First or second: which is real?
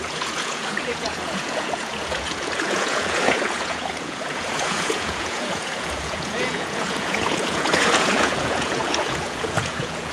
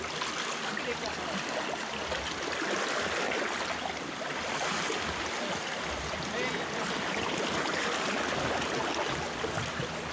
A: second